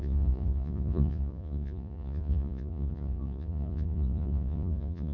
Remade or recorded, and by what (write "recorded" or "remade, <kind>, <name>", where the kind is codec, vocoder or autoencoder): remade, vocoder, Vocos